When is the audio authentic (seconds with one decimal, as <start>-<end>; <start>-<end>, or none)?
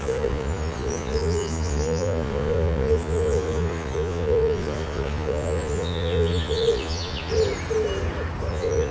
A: 7.3-8.5